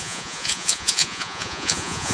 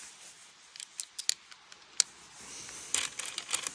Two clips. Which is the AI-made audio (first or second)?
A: first